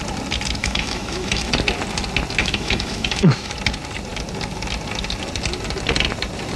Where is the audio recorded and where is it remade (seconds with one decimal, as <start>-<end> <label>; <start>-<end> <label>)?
0.0-0.6 recorded; 0.6-1.5 remade; 1.5-2.4 recorded; 2.4-3.5 remade; 3.5-6.6 recorded